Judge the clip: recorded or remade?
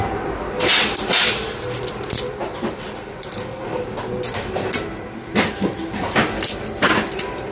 recorded